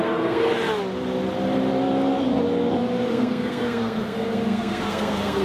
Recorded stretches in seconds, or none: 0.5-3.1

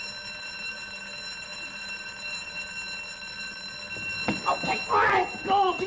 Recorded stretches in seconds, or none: 2.7-5.4

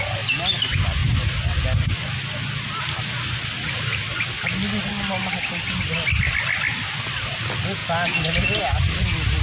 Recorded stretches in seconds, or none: 0.0-9.4

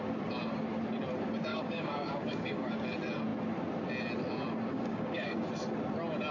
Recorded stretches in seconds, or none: 0.0-1.5; 2.7-4.7; 5.5-6.3

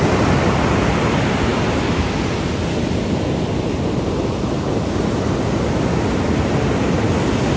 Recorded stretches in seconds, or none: 0.0-7.6

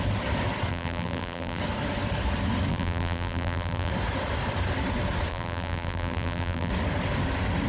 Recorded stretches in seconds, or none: 0.0-0.7; 1.6-2.7; 3.9-5.3; 6.7-7.7

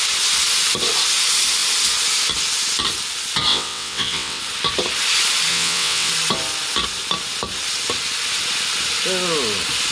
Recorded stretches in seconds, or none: 0.0-3.5; 4.4-5.5; 6.1-9.9

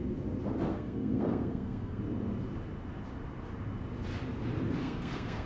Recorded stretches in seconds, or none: 0.0-0.7; 2.0-4.8